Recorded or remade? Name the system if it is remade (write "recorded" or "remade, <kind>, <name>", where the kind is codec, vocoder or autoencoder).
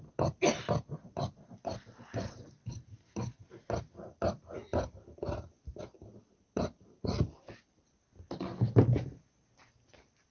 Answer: recorded